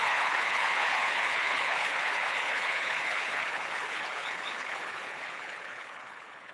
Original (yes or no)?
no